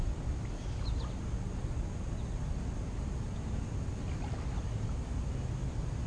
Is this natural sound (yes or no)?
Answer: yes